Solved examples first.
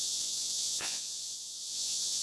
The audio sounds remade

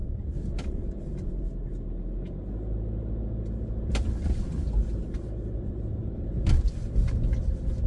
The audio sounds recorded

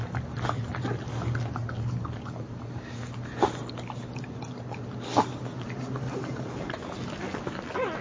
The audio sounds recorded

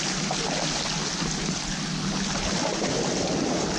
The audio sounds recorded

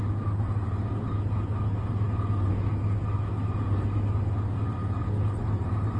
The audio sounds recorded